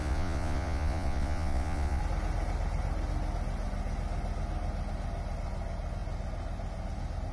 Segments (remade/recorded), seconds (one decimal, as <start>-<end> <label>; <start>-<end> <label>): 0.0-2.0 remade; 2.0-7.3 recorded